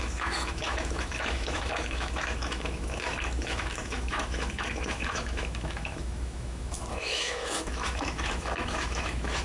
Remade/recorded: remade